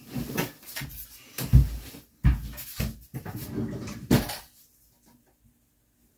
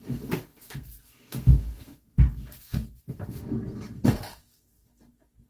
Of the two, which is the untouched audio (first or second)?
first